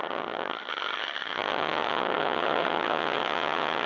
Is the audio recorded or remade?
remade